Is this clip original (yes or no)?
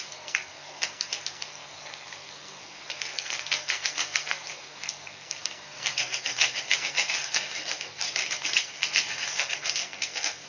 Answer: no